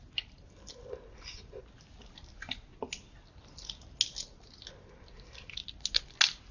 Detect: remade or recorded recorded